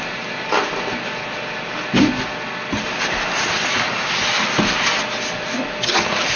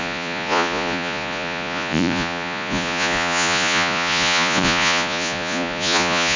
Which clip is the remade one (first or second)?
second